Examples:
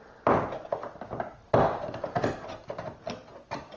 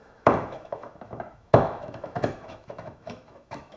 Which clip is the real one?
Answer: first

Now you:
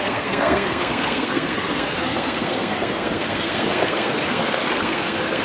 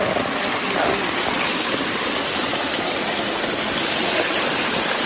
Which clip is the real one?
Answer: second